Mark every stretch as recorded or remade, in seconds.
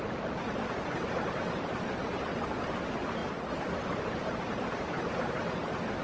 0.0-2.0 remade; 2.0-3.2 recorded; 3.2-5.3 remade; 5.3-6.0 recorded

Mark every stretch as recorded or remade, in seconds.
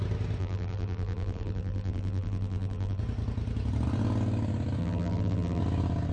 0.0-0.4 recorded; 0.4-3.0 remade; 3.0-4.8 recorded; 4.8-5.6 remade; 5.6-6.1 recorded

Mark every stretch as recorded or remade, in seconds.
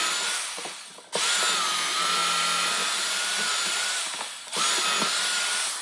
0.0-2.2 recorded; 2.2-4.6 remade; 4.6-5.8 recorded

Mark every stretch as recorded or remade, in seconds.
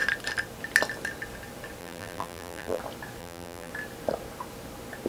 0.0-1.8 recorded; 1.8-2.8 remade; 2.8-3.2 recorded; 3.2-3.7 remade; 3.7-5.1 recorded